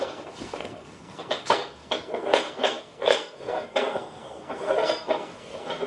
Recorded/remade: remade